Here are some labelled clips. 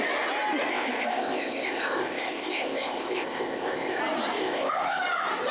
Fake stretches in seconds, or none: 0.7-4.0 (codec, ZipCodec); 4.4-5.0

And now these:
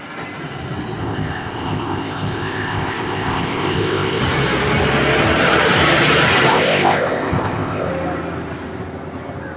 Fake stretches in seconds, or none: 1.0-4.2 (codec, ZipCodec); 6.5-7.9